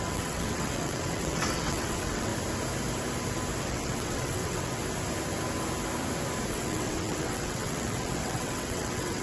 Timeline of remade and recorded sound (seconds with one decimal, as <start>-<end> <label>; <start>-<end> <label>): 0.0-2.3 remade; 2.3-3.6 recorded; 3.6-4.8 remade; 4.8-6.5 recorded; 6.5-9.2 remade